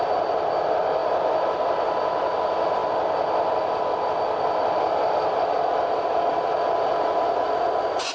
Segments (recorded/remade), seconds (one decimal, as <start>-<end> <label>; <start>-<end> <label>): 0.0-8.1 recorded